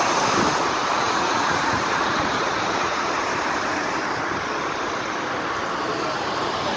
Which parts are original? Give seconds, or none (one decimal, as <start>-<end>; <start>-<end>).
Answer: 0.0-0.8; 3.1-6.8